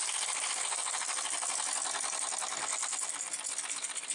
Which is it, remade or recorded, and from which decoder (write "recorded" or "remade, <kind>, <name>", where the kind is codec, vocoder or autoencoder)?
recorded